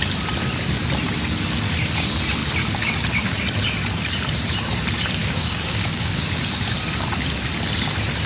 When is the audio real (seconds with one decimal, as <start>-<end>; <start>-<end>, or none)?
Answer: 0.0-5.2; 6.2-8.3